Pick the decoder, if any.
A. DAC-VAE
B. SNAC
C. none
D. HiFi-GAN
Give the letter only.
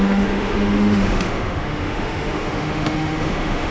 A